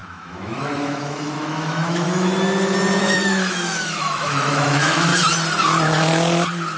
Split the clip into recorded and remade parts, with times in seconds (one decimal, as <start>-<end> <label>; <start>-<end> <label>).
0.0-2.3 remade; 2.3-3.0 recorded; 3.0-5.1 remade; 5.1-6.8 recorded